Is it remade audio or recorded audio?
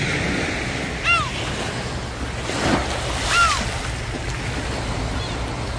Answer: recorded